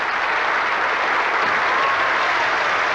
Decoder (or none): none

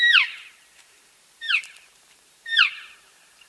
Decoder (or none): vocoder, BigVGAN v2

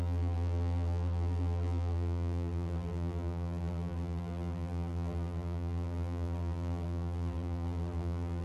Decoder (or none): vocoder, BigVGAN v2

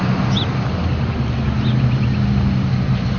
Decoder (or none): none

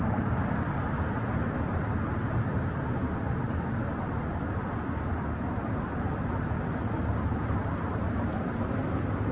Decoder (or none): vocoder, BigVGAN v2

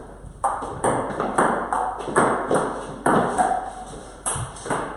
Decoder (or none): vocoder, BigVGAN v2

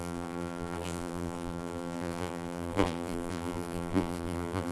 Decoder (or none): vocoder, BigVGAN v2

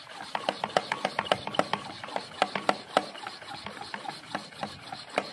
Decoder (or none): none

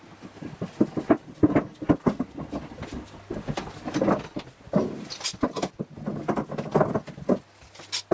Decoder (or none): none